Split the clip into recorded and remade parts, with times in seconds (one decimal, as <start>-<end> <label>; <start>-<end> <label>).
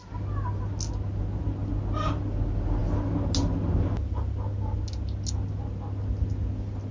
0.0-6.9 recorded